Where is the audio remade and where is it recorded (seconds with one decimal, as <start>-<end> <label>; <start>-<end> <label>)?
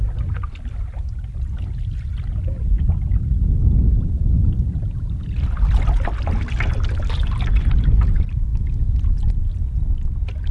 0.0-10.5 recorded